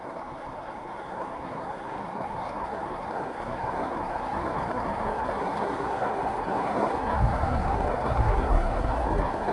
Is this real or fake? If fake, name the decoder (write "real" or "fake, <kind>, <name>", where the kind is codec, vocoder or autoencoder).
fake, codec, SNAC